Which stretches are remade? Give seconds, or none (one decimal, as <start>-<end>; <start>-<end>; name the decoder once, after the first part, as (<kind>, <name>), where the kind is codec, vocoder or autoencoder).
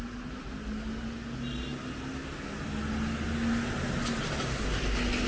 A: none